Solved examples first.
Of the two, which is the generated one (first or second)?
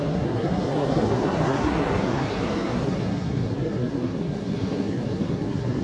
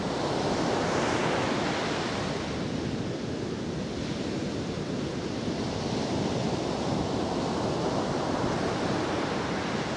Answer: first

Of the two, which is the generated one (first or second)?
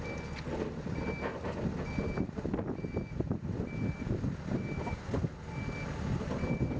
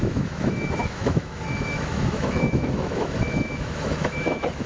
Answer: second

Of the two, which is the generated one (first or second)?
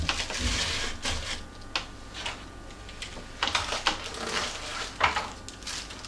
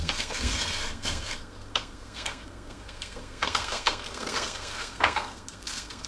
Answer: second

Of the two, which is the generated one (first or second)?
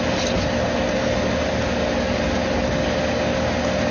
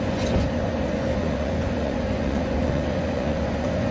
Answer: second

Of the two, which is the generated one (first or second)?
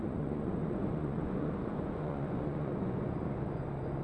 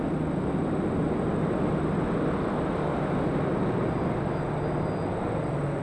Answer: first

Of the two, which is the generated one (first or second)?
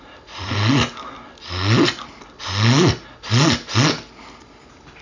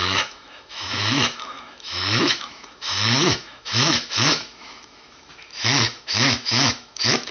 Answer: second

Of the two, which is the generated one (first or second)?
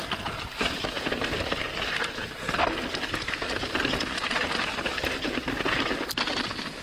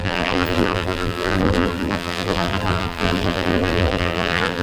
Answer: second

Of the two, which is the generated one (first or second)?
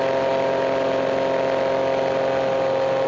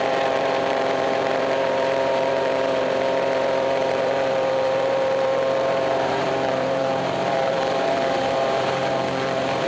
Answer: second